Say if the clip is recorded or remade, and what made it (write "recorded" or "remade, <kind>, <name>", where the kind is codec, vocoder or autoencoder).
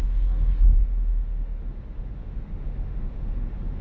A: remade, autoencoder, DAC-VAE